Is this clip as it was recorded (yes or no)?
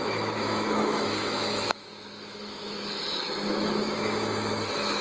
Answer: no